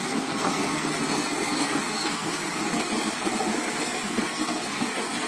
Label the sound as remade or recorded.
remade